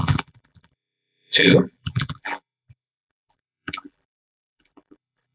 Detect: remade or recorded remade